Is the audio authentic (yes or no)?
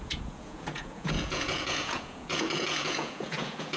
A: no